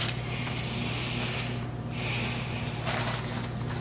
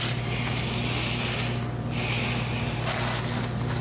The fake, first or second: first